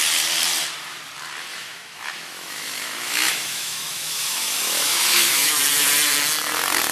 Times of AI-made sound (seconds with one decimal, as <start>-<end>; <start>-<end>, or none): 1.5-5.6